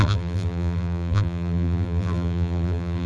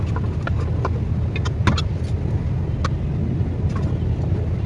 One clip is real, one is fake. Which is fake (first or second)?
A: first